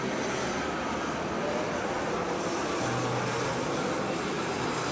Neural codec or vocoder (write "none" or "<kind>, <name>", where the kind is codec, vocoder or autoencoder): none